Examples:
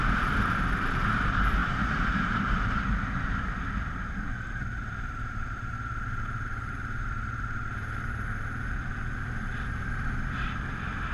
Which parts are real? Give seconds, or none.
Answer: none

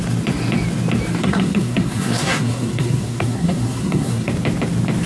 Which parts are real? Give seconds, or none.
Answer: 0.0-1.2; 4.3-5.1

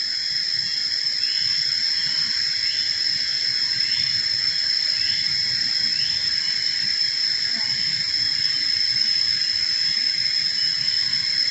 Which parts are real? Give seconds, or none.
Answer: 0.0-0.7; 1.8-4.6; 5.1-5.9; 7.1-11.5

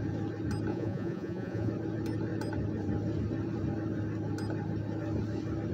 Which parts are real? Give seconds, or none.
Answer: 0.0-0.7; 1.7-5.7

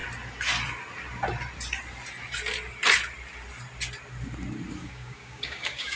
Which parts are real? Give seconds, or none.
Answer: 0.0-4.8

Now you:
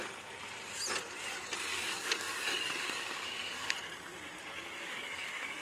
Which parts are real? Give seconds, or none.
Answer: 0.0-1.7; 3.7-4.4

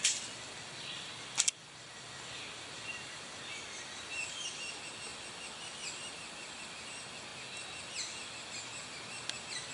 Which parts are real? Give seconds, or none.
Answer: 0.0-9.7

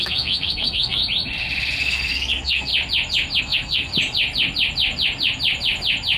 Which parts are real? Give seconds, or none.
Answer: 1.0-1.8; 2.7-3.4; 3.9-6.2